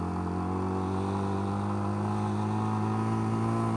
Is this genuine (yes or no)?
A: yes